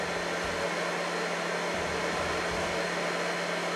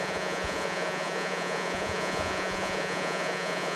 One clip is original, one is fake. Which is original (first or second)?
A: first